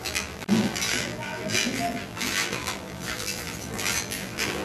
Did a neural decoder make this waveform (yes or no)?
yes